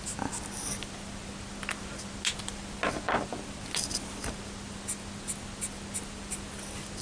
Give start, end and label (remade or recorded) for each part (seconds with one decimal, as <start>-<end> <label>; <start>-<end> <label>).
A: 0.0-7.0 recorded